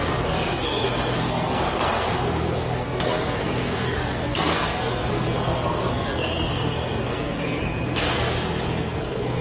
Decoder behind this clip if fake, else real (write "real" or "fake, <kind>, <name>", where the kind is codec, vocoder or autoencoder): fake, codec, SNAC